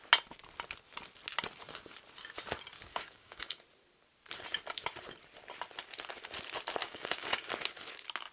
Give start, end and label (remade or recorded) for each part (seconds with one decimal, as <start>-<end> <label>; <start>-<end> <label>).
0.0-2.9 recorded; 2.9-3.6 remade; 3.6-6.8 recorded; 6.8-7.5 remade; 7.5-8.3 recorded